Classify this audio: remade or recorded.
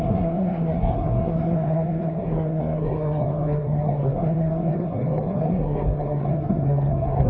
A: remade